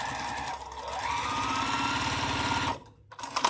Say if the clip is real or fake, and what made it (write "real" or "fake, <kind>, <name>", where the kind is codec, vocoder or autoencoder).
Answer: real